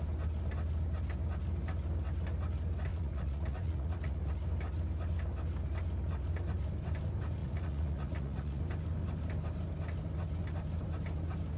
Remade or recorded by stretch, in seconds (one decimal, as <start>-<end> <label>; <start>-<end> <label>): 0.0-2.9 recorded; 2.9-4.3 remade; 4.3-7.4 recorded; 7.4-8.6 remade; 8.6-11.6 recorded